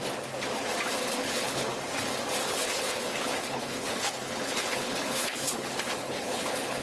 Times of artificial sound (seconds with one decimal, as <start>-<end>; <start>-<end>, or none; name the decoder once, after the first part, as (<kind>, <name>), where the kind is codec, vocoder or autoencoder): 1.1-1.7 (codec, HILCodec); 2.4-6.8